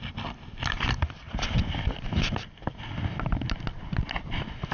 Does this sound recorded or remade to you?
recorded